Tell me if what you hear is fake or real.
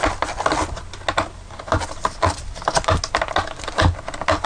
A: real